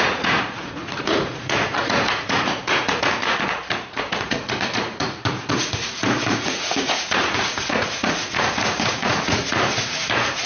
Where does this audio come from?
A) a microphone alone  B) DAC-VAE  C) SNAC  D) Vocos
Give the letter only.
D